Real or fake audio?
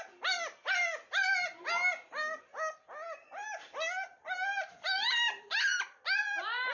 real